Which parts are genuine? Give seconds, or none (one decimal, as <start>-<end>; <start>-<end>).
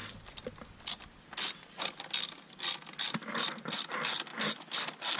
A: 1.8-5.2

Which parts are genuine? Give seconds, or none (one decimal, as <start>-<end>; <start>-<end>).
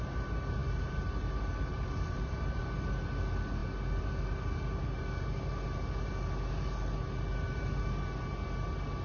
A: 0.0-0.6; 2.6-9.0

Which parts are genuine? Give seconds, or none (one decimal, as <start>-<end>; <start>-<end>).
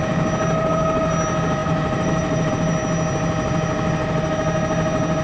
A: 0.0-1.6; 2.5-5.2